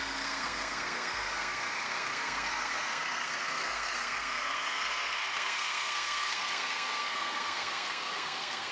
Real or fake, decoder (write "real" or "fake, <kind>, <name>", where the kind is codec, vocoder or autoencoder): fake, codec, SNAC